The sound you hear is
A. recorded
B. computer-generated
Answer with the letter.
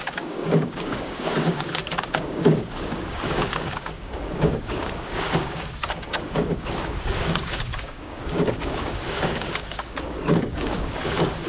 B